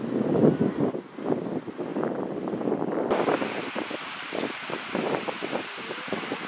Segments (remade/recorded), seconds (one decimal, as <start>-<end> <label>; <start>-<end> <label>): 0.0-6.5 recorded